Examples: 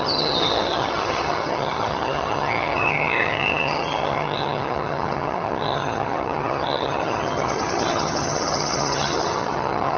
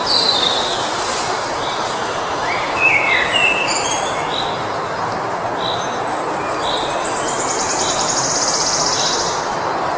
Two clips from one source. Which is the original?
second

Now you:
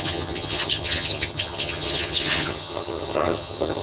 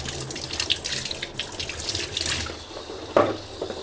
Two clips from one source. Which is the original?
second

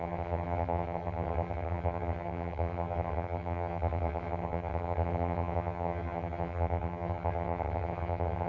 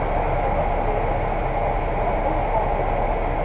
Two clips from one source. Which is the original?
second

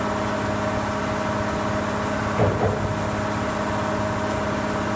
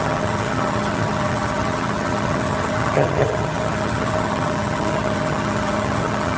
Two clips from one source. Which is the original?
first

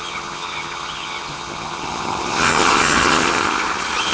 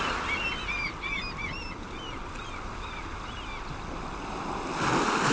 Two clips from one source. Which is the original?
second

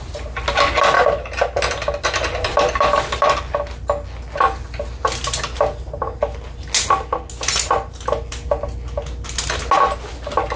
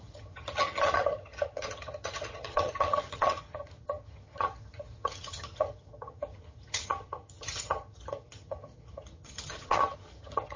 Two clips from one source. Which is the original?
first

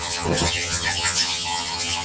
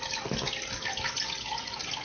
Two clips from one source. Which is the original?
second